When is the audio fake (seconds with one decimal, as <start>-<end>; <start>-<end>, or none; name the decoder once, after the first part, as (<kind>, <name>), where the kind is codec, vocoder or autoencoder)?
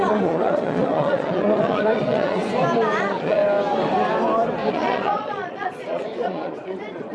0.0-2.4 (vocoder, Vocos); 3.0-3.4; 4.7-7.1